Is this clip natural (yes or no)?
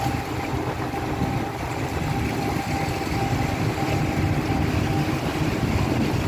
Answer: yes